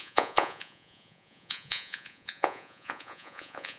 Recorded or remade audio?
remade